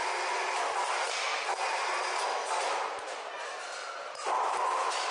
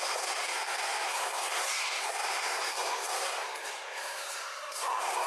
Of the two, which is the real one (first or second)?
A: first